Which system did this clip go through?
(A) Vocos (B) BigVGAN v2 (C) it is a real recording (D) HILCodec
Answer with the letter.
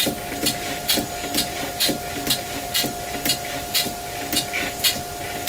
C